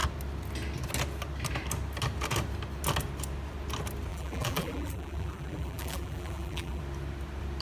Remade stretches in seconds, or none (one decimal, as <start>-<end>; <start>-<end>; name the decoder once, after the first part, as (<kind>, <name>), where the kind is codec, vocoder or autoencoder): 4.1-6.8 (vocoder, BigVGAN v2)